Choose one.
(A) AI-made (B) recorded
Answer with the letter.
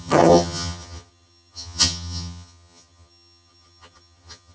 A